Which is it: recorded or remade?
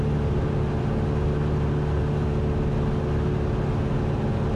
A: recorded